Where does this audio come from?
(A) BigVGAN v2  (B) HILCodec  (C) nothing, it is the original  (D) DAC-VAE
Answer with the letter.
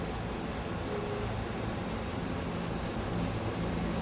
C